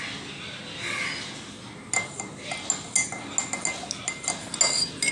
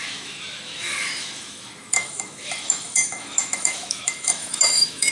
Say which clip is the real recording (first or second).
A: first